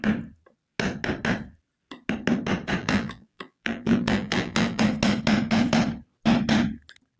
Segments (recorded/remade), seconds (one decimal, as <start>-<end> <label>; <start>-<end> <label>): 0.0-2.8 recorded; 2.8-4.8 remade; 4.8-7.2 recorded